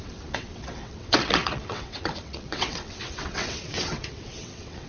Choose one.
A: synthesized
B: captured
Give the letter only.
A